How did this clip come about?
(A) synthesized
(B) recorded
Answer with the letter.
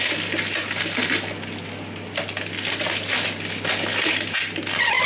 B